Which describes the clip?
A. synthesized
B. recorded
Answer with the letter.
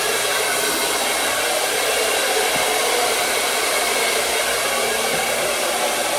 B